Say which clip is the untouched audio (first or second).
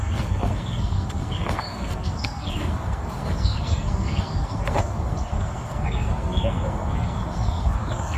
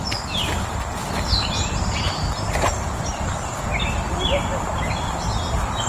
second